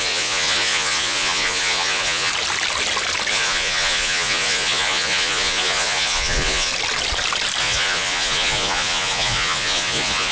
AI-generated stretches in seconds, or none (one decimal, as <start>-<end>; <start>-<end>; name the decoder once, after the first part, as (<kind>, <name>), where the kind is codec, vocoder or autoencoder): 0.0-2.3 (vocoder, Vocos); 3.3-6.7; 7.6-10.3